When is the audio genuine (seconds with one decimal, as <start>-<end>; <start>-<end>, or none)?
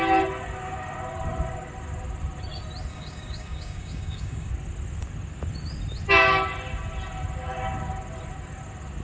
0.0-2.9; 4.5-9.0